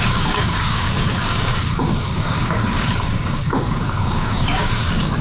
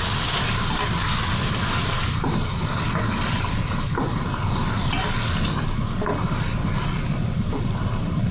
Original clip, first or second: second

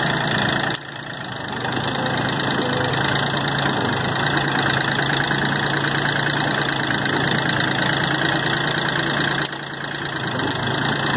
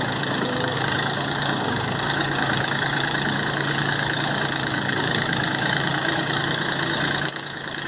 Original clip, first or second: first